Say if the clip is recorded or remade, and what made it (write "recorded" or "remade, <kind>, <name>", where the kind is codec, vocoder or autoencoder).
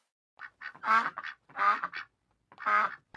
recorded